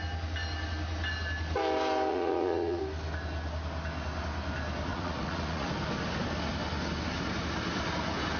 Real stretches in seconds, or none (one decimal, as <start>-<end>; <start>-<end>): 0.0-2.1; 2.8-4.9; 5.7-8.4